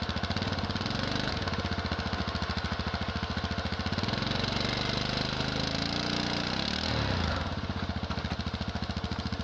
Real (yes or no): yes